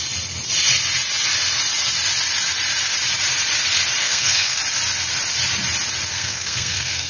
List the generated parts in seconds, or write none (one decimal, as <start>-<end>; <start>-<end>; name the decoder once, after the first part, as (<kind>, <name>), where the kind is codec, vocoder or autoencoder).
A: 4.0-4.6 (codec, SNAC); 6.1-7.1